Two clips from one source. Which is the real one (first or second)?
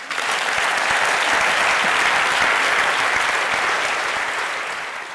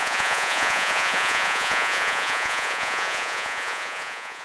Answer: first